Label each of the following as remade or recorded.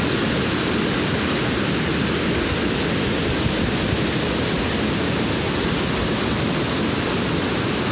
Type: recorded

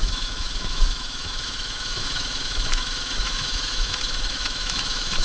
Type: remade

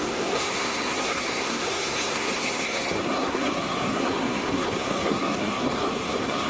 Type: remade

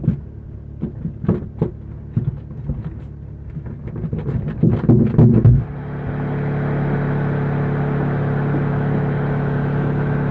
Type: recorded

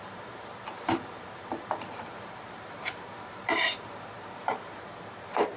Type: remade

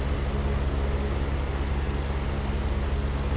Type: recorded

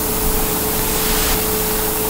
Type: recorded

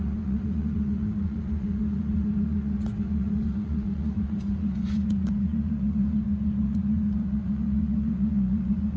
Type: remade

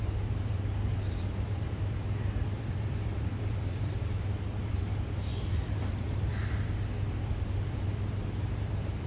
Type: remade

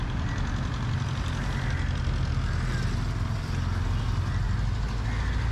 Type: recorded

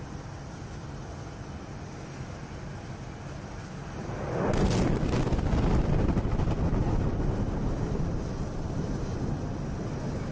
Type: recorded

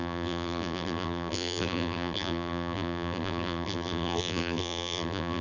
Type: remade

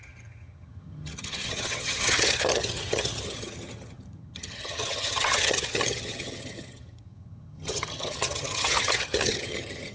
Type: remade